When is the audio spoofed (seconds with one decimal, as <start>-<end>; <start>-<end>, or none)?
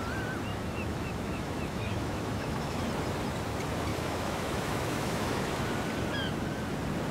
0.5-2.8; 3.9-5.6